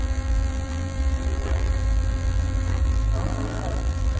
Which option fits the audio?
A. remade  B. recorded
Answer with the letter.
A